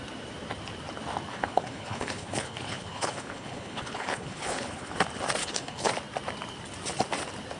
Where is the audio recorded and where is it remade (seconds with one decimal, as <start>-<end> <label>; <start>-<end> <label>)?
0.0-1.3 recorded; 1.3-5.0 remade; 5.0-5.4 recorded; 5.4-5.9 remade; 5.9-7.6 recorded